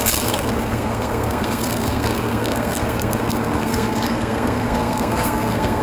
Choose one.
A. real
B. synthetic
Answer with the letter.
B